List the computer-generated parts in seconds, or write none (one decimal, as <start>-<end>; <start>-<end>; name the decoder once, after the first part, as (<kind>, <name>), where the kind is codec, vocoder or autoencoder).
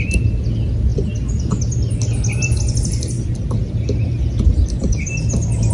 none